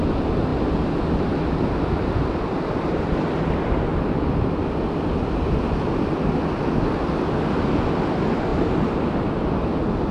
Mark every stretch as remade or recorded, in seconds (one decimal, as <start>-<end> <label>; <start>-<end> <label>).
0.0-10.1 recorded

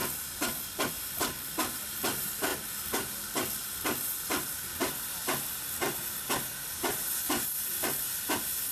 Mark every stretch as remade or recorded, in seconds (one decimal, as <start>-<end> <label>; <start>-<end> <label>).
0.0-0.9 recorded; 0.9-2.5 remade; 2.5-7.2 recorded; 7.2-8.7 remade

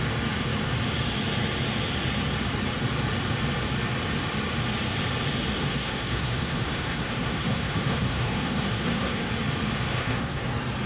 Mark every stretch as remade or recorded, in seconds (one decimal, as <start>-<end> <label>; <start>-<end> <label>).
0.0-5.6 recorded; 5.6-9.3 remade; 9.3-9.9 recorded; 9.9-10.5 remade; 10.5-10.9 recorded

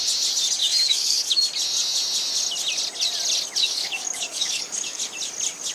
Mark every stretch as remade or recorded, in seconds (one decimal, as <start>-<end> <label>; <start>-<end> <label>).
0.0-0.6 recorded; 0.6-1.4 remade; 1.4-3.6 recorded; 3.6-5.0 remade; 5.0-5.7 recorded

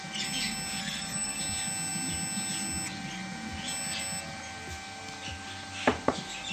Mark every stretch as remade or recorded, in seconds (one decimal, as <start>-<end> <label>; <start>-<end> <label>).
0.0-0.8 recorded; 0.8-1.4 remade; 1.4-6.5 recorded